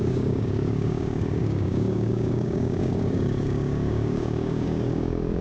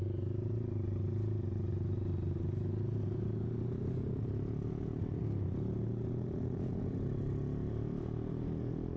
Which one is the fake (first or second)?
first